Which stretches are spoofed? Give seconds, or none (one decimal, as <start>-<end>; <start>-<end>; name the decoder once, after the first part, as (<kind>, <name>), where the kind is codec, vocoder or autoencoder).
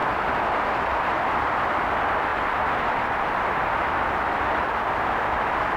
2.3-4.9 (vocoder, BigVGAN v2)